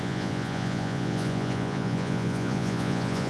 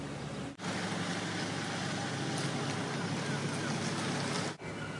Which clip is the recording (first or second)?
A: second